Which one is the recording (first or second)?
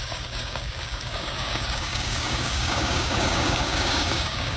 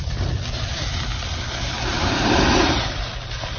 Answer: second